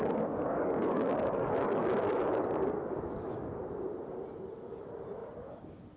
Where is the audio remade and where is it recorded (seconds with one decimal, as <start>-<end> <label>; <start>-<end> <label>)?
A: 0.0-3.6 remade; 3.6-6.0 recorded